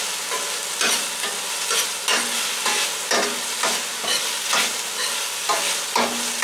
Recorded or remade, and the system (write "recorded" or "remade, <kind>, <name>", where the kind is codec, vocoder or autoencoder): recorded